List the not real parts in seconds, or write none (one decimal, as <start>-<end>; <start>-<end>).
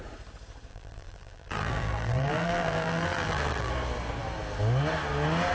0.7-3.7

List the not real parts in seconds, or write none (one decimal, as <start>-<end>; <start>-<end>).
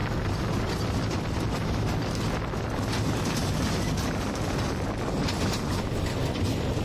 none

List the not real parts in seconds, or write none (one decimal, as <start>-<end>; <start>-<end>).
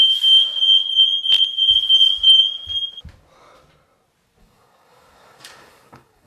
0.0-0.6; 4.4-6.3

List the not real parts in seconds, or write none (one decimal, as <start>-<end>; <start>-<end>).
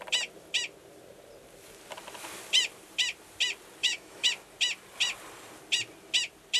3.8-4.3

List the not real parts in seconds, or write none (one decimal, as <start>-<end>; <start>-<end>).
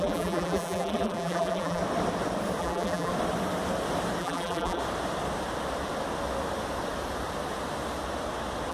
0.0-1.8; 2.6-3.1; 4.2-4.8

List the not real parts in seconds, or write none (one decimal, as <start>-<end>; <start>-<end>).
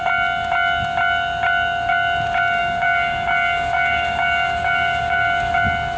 2.6-5.5